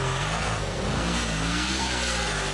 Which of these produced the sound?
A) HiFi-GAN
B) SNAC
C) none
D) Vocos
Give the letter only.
B